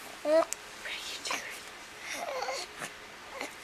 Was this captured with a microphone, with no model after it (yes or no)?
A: yes